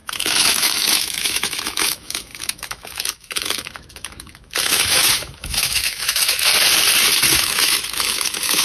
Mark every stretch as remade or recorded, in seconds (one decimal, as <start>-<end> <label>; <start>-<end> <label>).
0.0-6.5 remade; 6.5-7.4 recorded; 7.4-8.6 remade